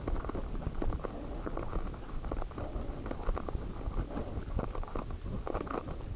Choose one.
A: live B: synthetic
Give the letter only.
A